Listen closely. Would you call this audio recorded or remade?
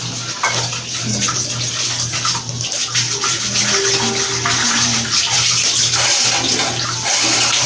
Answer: recorded